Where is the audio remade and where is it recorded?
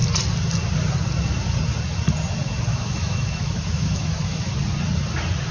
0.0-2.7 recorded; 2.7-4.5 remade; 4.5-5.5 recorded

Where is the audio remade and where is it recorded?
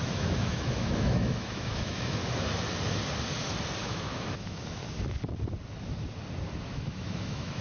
0.0-2.2 remade; 2.2-3.8 recorded; 3.8-4.8 remade; 4.8-6.6 recorded; 6.6-7.6 remade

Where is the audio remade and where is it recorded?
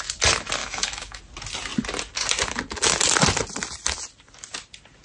0.0-0.6 recorded; 0.6-1.2 remade; 1.2-5.0 recorded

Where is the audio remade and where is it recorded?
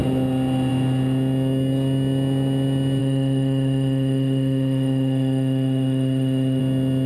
0.0-3.0 recorded; 3.0-6.6 remade; 6.6-7.1 recorded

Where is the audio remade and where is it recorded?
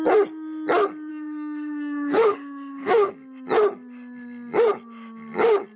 0.0-1.1 recorded; 1.1-3.1 remade; 3.1-5.8 recorded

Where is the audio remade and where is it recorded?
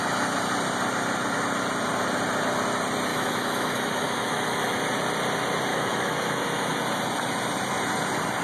0.0-3.1 recorded; 3.1-4.8 remade; 4.8-5.7 recorded; 5.7-6.8 remade; 6.8-8.4 recorded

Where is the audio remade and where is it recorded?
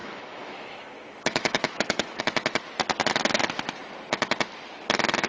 0.0-2.2 remade; 2.2-5.3 recorded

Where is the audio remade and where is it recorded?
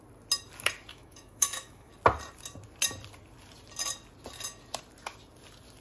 0.0-0.9 recorded; 0.9-1.9 remade; 1.9-5.8 recorded